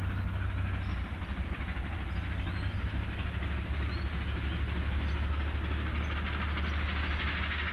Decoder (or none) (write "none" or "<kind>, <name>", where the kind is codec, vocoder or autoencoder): none